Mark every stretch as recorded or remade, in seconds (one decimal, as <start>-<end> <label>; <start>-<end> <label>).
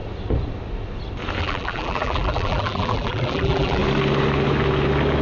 0.0-1.4 recorded; 1.4-3.8 remade; 3.8-5.2 recorded